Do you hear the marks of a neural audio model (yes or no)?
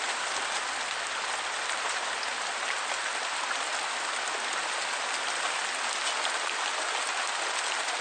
no